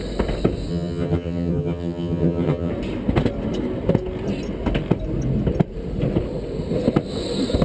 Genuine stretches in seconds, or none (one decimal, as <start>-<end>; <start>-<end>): 0.0-0.7; 2.7-7.6